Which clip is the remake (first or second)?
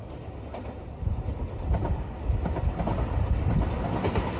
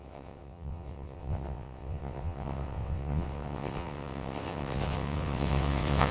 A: second